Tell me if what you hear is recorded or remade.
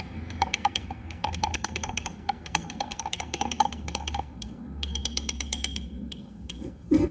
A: remade